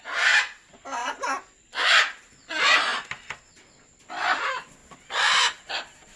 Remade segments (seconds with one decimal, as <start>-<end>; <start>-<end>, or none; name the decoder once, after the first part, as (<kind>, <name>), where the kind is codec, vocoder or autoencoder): none